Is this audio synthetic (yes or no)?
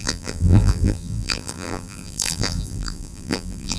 yes